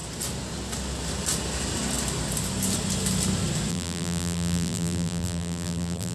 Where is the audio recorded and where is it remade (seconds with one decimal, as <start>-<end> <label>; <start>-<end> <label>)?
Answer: 0.0-3.7 recorded; 3.7-6.1 remade